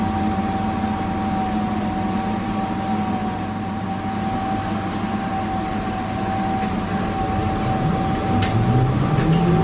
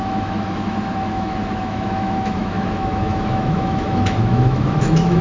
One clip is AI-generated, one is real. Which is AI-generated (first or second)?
second